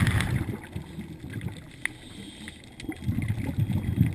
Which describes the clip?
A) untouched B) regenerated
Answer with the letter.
A